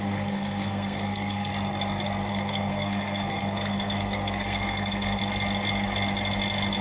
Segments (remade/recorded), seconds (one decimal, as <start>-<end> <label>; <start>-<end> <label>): 0.0-1.5 remade; 1.5-2.3 recorded; 2.3-5.2 remade; 5.2-6.8 recorded